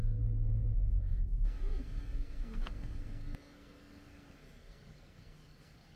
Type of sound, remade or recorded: remade